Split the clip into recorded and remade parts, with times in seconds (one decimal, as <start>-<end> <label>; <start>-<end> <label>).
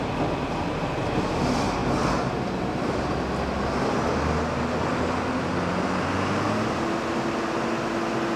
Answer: 0.0-8.4 recorded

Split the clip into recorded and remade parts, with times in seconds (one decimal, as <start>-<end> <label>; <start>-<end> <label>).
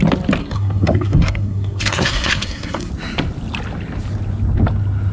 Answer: 0.0-0.4 recorded; 0.4-2.9 remade; 2.9-5.1 recorded